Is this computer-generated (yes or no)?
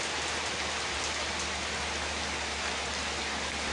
no